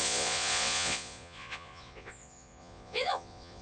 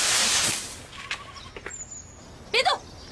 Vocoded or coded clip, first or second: first